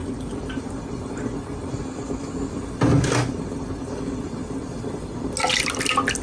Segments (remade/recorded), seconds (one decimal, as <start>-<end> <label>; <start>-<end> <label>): 0.0-6.2 recorded